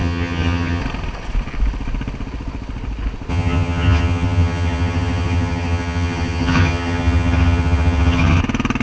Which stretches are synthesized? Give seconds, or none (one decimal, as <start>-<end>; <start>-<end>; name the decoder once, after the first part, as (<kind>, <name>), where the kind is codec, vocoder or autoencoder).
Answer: 0.0-0.8 (vocoder, HiFi-GAN); 3.3-8.4